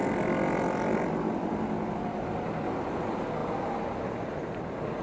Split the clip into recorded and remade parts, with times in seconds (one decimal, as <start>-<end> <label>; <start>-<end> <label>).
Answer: 0.0-5.0 recorded